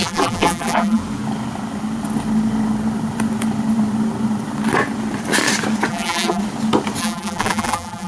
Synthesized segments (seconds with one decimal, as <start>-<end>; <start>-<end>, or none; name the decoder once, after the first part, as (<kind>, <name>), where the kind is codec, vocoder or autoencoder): 0.0-1.0 (vocoder, BigVGAN v2); 5.9-6.4; 7.0-8.1